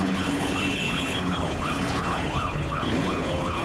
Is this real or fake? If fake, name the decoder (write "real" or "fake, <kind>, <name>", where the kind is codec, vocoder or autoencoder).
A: fake, codec, HILCodec